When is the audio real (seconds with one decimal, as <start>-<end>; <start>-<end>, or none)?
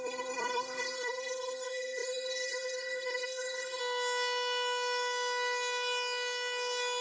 3.8-7.0